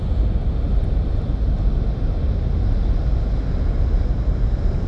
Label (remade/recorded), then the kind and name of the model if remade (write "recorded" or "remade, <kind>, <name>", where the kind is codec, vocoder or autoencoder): recorded